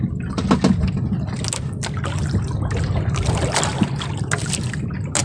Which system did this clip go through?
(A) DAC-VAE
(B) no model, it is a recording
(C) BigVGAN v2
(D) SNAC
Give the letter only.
B